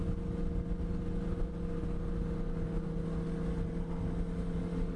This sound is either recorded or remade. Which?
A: recorded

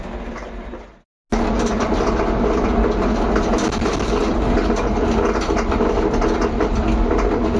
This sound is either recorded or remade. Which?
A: recorded